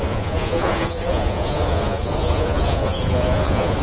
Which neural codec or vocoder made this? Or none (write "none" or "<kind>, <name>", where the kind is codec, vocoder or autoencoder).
vocoder, Vocos